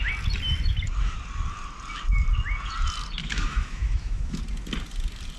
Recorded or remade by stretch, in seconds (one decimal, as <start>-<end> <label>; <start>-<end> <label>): 0.0-3.2 recorded; 3.2-4.4 remade; 4.4-5.4 recorded